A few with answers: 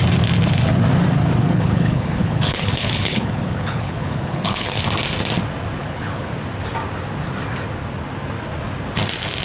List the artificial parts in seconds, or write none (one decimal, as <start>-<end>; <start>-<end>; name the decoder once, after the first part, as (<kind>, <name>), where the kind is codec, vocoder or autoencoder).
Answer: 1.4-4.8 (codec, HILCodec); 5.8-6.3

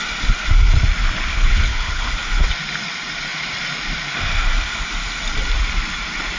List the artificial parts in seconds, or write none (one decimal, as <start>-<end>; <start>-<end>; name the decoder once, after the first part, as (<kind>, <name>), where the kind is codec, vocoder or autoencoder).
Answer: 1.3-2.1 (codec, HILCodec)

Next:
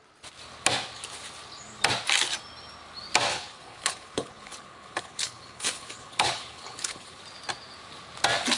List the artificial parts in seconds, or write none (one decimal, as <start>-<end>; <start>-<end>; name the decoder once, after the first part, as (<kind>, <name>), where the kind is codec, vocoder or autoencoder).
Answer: 3.3-7.2 (codec, HILCodec)